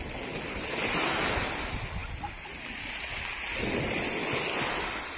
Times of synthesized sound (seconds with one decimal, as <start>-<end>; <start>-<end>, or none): none

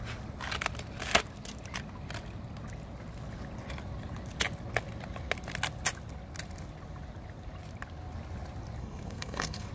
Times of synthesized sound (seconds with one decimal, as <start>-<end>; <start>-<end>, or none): 8.8-9.7

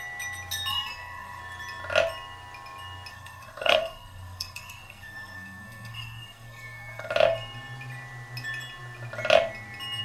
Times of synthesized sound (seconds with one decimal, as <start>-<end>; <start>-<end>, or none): 0.7-1.4; 3.1-7.1

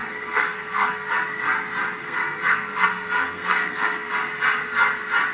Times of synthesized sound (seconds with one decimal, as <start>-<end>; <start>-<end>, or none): 0.0-1.1; 2.0-4.1

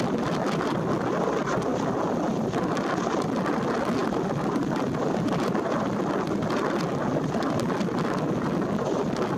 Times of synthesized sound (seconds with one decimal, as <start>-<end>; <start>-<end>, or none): none

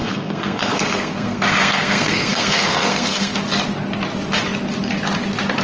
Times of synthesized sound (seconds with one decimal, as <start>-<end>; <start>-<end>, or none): 0.0-3.4

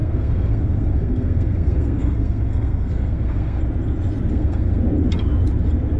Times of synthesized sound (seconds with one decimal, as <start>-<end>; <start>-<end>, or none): 0.0-3.6; 4.3-4.8